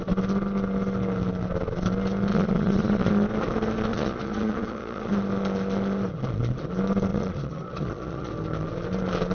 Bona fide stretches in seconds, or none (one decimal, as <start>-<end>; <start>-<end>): 0.0-2.3; 3.1-3.9; 5.1-7.1; 8.3-9.3